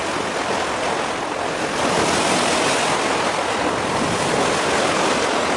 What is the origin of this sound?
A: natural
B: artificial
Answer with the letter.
A